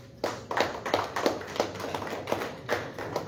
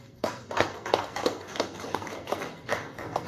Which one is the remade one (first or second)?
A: second